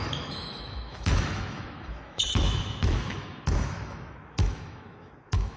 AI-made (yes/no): yes